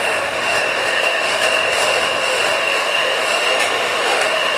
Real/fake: fake